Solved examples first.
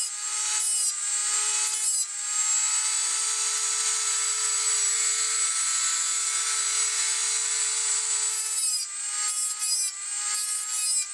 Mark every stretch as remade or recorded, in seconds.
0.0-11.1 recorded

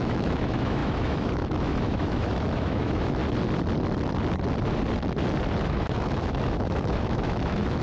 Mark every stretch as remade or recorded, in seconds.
0.0-3.2 remade; 3.2-5.7 recorded; 5.7-7.8 remade

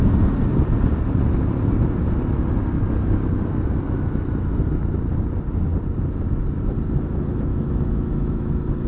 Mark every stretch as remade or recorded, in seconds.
0.0-7.5 recorded; 7.5-8.5 remade; 8.5-8.9 recorded

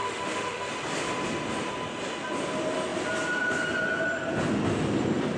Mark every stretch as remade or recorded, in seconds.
0.0-0.7 remade; 0.7-5.4 recorded

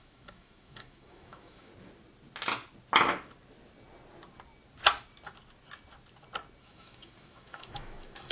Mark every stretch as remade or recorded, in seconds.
0.0-1.7 remade; 1.7-6.6 recorded; 6.6-8.3 remade

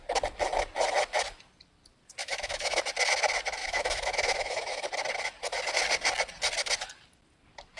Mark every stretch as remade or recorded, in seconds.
0.0-2.2 recorded; 2.2-2.8 remade; 2.8-3.6 recorded; 3.6-4.9 remade; 4.9-7.8 recorded

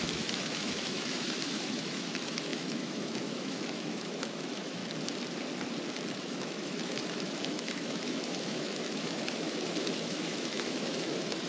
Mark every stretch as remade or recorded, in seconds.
0.0-4.8 remade; 4.8-6.1 recorded; 6.1-11.5 remade

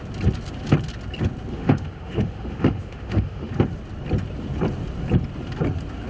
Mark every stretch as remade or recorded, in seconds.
0.0-1.5 recorded; 1.5-3.5 remade; 3.5-6.1 recorded